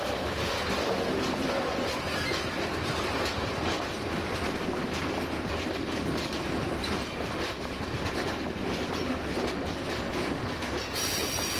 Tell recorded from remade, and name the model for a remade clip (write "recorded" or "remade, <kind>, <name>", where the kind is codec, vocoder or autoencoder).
recorded